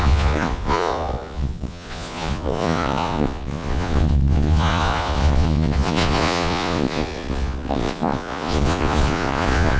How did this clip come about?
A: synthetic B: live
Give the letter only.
A